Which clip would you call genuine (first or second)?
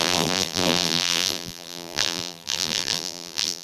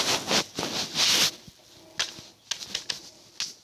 second